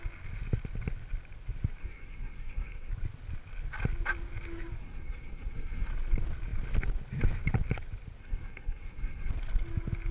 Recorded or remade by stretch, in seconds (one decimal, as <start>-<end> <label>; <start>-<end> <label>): 0.0-1.8 recorded; 1.8-2.9 remade; 2.9-4.8 recorded; 4.8-5.9 remade; 5.9-8.2 recorded; 8.2-9.3 remade; 9.3-10.1 recorded